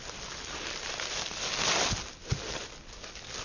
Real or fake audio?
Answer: real